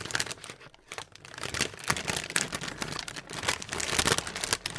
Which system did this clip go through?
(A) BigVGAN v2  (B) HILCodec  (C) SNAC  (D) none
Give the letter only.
D